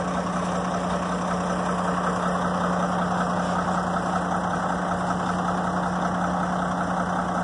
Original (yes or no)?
yes